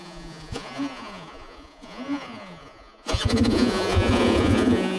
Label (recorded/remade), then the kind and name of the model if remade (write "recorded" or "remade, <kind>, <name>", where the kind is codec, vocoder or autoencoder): remade, vocoder, Vocos